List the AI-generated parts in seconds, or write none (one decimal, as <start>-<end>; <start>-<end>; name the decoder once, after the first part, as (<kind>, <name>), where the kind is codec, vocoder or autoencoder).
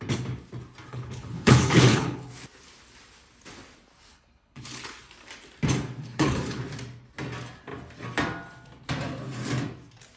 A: 0.9-2.3 (codec, HILCodec); 4.1-5.0; 6.0-6.6